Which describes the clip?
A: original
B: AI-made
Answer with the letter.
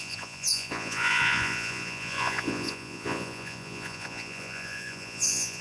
B